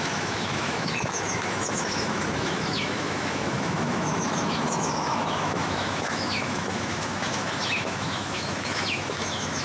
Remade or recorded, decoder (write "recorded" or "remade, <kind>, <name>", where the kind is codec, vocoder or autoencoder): remade, autoencoder, DAC-VAE